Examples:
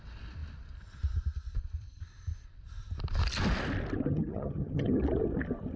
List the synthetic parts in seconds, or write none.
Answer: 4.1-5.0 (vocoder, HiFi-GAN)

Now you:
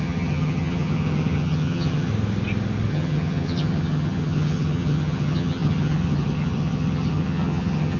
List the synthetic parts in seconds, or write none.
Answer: 0.0-2.1 (vocoder, HiFi-GAN); 2.9-8.0

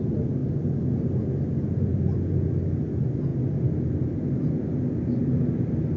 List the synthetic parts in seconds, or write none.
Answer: none

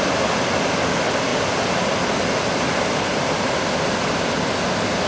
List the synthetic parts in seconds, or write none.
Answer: none

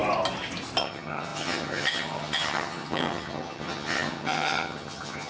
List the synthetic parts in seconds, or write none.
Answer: 0.8-5.3 (vocoder, HiFi-GAN)